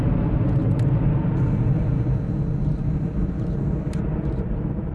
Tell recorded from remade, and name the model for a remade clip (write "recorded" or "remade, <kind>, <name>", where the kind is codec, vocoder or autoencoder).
recorded